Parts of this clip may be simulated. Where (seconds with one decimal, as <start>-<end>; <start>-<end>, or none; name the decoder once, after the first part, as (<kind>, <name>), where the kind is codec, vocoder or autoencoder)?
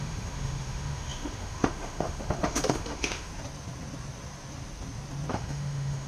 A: 0.0-3.3 (autoencoder, DAC-VAE); 5.3-6.1